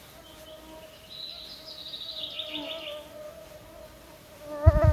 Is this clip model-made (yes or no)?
no